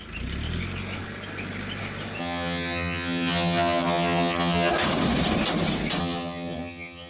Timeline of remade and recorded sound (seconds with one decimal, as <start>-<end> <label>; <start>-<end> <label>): 0.0-2.2 recorded; 2.2-4.7 remade; 4.7-6.0 recorded; 6.0-7.1 remade

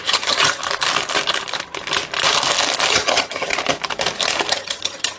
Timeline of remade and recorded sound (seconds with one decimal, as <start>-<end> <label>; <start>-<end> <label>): 0.0-0.6 remade; 0.6-2.9 recorded; 2.9-3.5 remade; 3.5-4.5 recorded; 4.5-5.2 remade

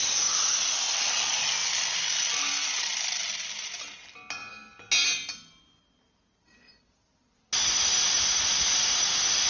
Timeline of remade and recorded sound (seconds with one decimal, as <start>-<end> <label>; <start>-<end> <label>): 0.0-9.5 recorded

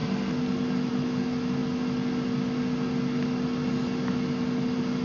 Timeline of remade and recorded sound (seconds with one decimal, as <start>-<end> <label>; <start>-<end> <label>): 0.0-5.0 recorded

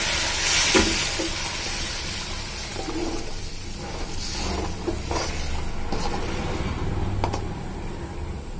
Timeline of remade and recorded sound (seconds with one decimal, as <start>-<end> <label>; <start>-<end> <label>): 0.0-8.6 recorded

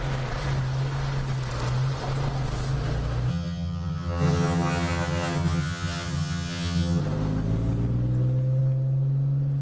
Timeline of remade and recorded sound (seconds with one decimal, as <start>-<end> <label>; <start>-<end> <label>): 0.0-3.3 recorded; 3.3-7.0 remade; 7.0-9.6 recorded

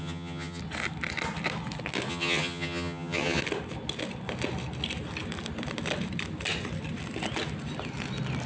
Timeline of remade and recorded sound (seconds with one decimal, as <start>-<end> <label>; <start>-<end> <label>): 0.0-0.6 remade; 0.6-2.1 recorded; 2.1-3.4 remade; 3.4-8.5 recorded